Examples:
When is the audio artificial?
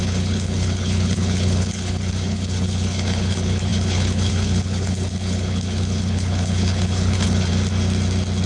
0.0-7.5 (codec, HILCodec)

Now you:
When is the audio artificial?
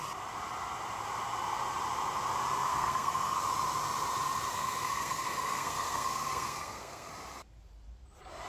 2.7-3.4 (codec, SNAC); 4.5-7.1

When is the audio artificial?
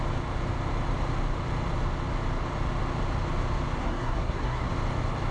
3.8-4.7 (codec, SNAC)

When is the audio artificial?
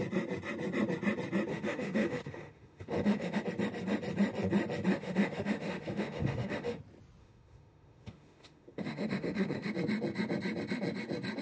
1.5-3.4 (autoencoder, DAC-VAE); 4.9-6.8; 7.2-9.7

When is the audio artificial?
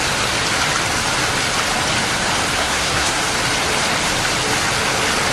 2.6-3.2 (codec, SNAC)